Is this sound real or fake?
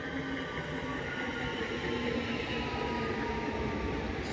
real